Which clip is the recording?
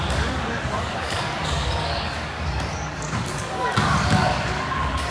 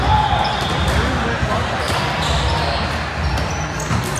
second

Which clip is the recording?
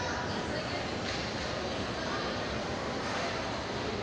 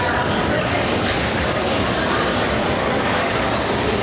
first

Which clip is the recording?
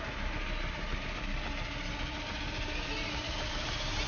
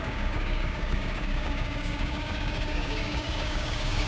first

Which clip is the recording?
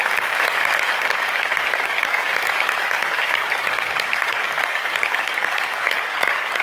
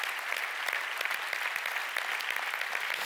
second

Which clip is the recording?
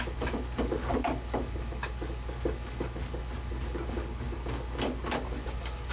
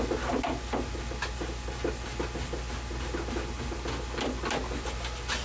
second